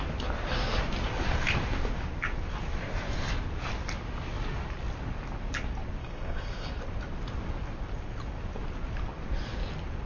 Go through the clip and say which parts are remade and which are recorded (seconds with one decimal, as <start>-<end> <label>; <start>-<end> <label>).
0.0-6.0 recorded; 6.0-6.7 remade; 6.7-10.1 recorded

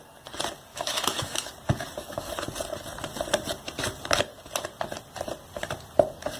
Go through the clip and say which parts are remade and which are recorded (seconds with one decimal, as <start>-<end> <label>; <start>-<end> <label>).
0.0-0.7 recorded; 0.7-1.5 remade; 1.5-2.0 recorded; 2.0-2.5 remade; 2.5-6.4 recorded